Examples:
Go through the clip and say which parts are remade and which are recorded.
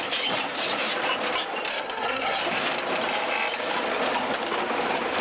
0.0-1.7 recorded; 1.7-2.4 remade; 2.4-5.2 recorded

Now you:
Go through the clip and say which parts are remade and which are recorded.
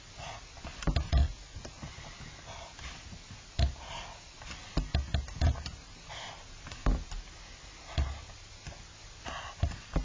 0.0-10.0 recorded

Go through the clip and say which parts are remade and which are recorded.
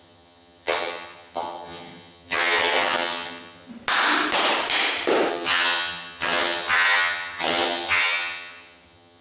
0.0-3.7 remade; 3.7-5.3 recorded; 5.3-9.2 remade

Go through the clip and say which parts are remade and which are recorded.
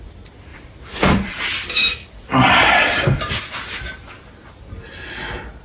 0.0-0.5 recorded; 0.5-1.3 remade; 1.3-2.0 recorded; 2.0-3.3 remade; 3.3-5.6 recorded